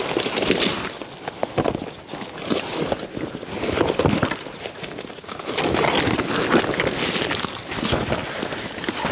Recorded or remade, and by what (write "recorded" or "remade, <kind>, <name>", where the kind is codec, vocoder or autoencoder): recorded